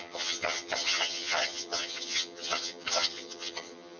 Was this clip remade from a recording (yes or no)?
yes